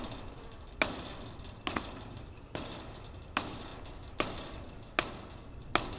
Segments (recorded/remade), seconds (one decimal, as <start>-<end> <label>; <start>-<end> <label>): 0.0-6.0 recorded